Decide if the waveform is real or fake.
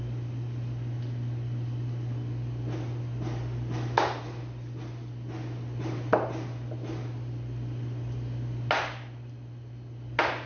real